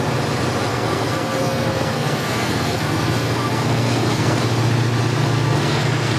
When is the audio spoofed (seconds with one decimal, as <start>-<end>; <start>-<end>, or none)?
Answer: 0.7-4.4; 5.2-6.2